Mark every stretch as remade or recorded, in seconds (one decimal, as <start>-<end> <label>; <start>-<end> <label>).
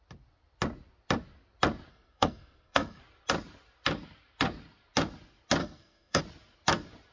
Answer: 0.0-1.9 recorded; 1.9-3.0 remade; 3.0-5.6 recorded; 5.6-6.2 remade; 6.2-7.1 recorded